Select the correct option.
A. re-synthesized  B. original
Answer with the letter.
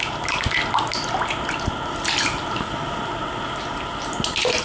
B